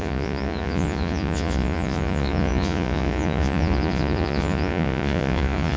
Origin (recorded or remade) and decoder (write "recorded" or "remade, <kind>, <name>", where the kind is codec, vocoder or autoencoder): remade, vocoder, Vocos